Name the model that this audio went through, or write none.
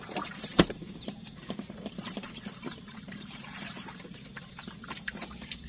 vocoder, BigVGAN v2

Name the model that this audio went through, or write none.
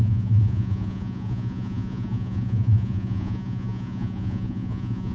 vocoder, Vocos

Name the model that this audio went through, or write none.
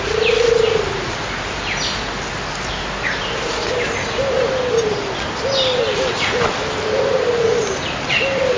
none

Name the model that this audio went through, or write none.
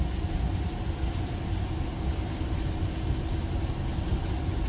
none